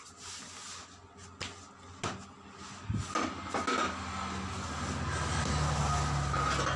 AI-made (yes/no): no